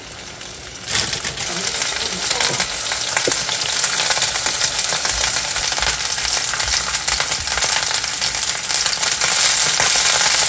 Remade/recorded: recorded